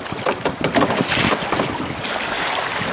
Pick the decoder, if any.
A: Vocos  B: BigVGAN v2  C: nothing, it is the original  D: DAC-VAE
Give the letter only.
C